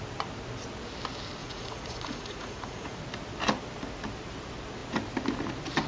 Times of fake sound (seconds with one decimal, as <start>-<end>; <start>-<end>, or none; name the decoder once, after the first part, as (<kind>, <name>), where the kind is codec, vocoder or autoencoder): 1.4-3.0 (vocoder, Vocos)